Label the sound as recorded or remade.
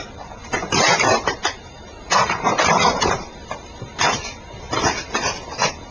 remade